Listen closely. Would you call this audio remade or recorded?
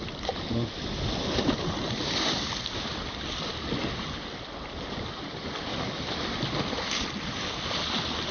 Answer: recorded